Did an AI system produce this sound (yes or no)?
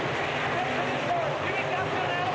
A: no